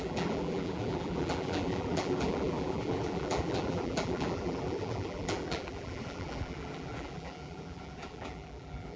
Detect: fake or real fake